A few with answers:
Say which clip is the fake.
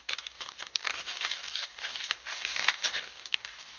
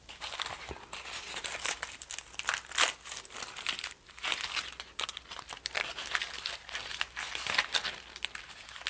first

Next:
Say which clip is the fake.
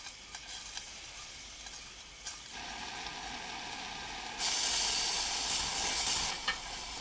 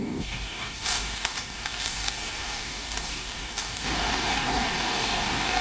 second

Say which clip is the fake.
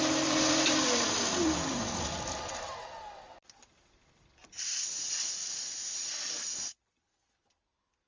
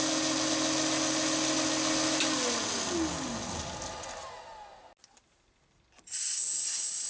first